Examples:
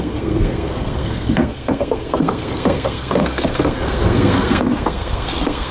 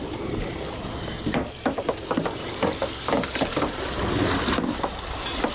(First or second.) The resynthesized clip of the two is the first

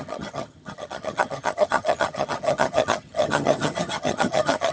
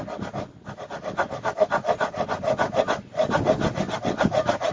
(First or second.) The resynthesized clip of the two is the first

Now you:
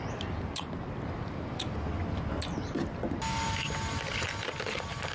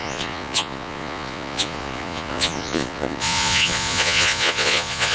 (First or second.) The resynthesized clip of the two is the second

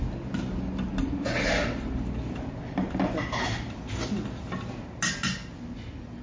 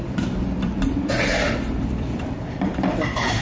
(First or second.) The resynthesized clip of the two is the second